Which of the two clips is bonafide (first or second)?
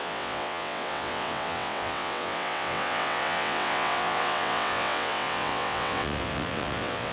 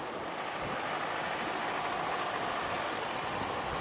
second